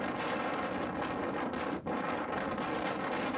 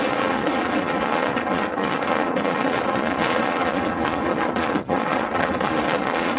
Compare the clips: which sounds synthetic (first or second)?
second